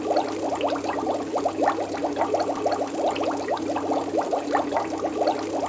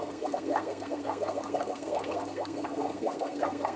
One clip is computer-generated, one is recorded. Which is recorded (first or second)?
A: first